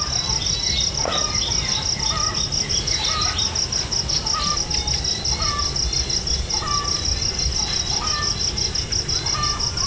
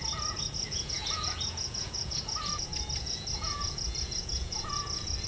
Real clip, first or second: first